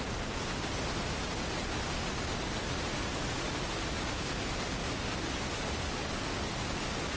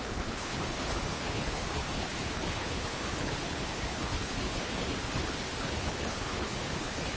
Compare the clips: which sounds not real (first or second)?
second